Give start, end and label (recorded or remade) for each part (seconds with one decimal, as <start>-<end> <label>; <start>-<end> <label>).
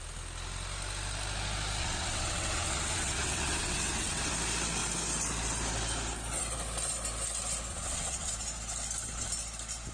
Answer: 0.0-1.8 recorded; 1.8-4.3 remade; 4.3-7.7 recorded; 7.7-8.3 remade; 8.3-9.9 recorded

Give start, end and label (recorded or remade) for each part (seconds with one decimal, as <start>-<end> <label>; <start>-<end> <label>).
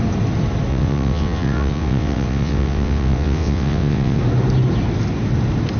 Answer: 0.0-0.7 recorded; 0.7-4.2 remade; 4.2-5.8 recorded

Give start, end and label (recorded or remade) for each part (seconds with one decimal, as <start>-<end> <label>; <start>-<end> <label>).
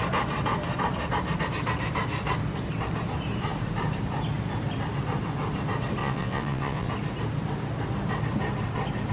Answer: 0.0-6.0 recorded; 6.0-6.9 remade; 6.9-9.1 recorded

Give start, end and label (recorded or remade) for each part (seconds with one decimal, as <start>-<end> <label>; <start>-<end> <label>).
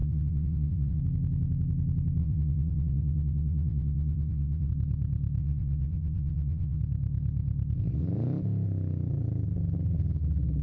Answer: 0.0-1.0 remade; 1.0-2.2 recorded; 2.2-4.7 remade; 4.7-5.4 recorded; 5.4-6.8 remade; 6.8-10.6 recorded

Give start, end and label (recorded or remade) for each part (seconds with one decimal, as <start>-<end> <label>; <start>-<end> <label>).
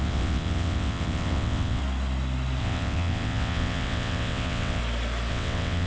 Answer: 0.0-1.8 remade; 1.8-2.6 recorded; 2.6-4.8 remade; 4.8-5.3 recorded; 5.3-5.9 remade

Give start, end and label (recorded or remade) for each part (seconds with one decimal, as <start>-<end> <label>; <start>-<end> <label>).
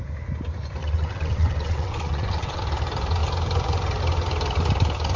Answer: 0.0-0.8 recorded; 0.8-2.6 remade; 2.6-5.2 recorded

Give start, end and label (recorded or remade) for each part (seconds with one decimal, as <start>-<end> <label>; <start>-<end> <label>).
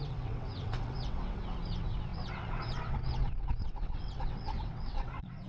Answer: 0.0-5.5 remade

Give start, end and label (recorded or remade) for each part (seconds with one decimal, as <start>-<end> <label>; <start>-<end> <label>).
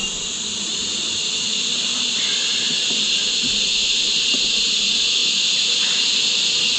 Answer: 0.0-6.8 recorded